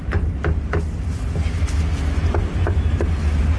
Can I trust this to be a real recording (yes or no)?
yes